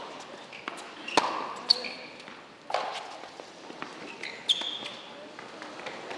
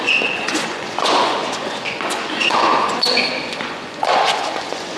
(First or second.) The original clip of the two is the first